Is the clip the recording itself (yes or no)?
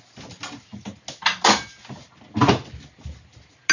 yes